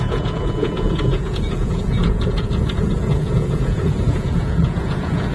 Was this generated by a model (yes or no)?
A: yes